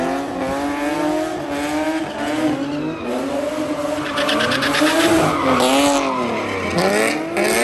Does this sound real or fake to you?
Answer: real